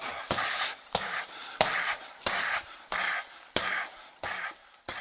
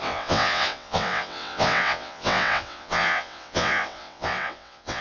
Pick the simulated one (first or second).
second